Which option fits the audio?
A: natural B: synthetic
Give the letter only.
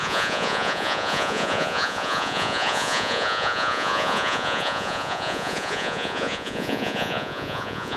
B